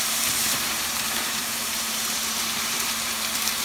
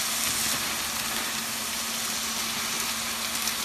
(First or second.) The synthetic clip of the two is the first